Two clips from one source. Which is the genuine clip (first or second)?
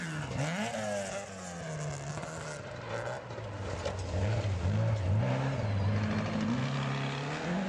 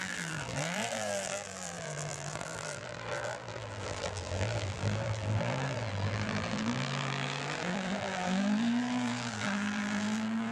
first